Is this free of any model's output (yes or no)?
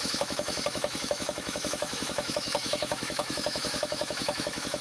no